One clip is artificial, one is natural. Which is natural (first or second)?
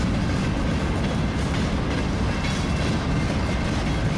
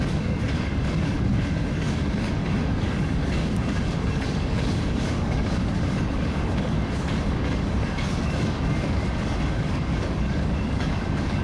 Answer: first